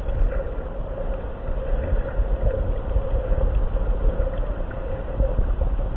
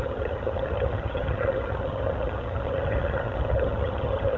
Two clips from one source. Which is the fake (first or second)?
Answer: second